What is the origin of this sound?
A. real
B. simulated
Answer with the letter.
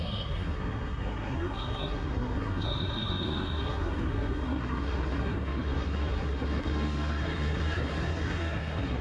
B